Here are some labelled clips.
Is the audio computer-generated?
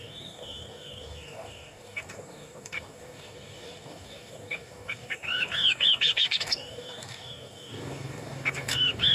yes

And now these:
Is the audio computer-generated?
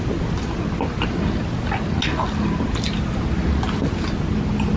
no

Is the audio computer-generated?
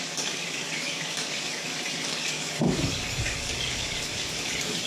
yes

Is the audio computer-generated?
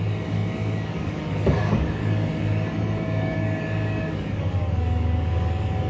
yes